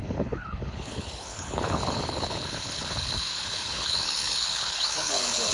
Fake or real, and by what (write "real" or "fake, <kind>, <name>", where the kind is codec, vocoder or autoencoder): fake, codec, HILCodec